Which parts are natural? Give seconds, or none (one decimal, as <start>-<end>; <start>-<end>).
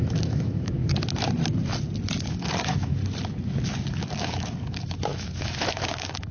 0.8-2.3; 3.0-3.9